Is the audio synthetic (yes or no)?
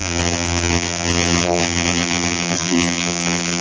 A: yes